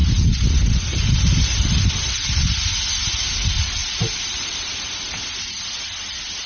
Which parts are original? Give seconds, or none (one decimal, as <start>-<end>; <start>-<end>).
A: 0.0-3.8; 4.7-6.5